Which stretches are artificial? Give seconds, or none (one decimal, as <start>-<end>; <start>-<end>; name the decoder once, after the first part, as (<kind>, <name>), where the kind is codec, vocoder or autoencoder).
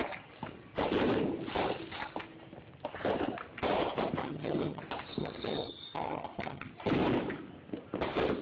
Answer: 4.2-4.8 (vocoder, HiFi-GAN); 5.2-6.7